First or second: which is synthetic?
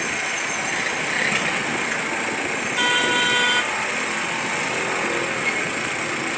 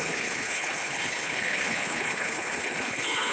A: second